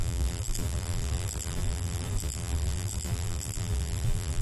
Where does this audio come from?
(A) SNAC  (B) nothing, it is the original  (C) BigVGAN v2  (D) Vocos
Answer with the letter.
C